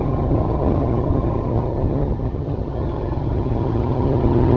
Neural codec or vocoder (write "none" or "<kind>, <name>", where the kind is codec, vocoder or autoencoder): vocoder, HiFi-GAN